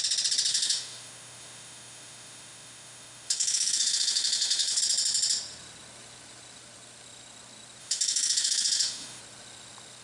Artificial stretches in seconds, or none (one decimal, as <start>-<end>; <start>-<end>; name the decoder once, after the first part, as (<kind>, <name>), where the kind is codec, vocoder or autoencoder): 0.5-4.8 (autoencoder, DAC-VAE); 7.8-9.2